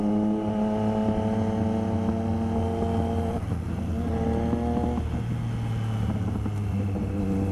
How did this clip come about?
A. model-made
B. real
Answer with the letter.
B